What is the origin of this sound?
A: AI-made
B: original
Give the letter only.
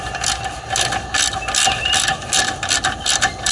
B